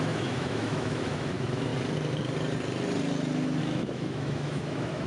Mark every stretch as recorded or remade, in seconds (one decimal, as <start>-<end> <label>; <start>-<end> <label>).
0.0-1.7 remade; 1.7-3.6 recorded; 3.6-5.1 remade